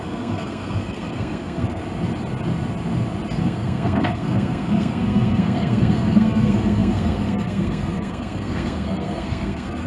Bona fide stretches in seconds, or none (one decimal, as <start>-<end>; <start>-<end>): 1.8-3.4